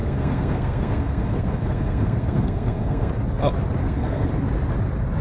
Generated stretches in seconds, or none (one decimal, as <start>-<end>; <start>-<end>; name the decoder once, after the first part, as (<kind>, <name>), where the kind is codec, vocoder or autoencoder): 0.0-3.1 (codec, SNAC); 3.8-4.3